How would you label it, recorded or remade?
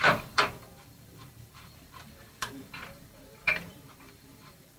remade